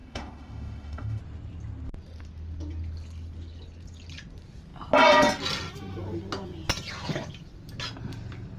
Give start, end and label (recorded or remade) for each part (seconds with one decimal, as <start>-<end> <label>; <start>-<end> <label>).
0.0-1.2 remade; 1.2-8.6 recorded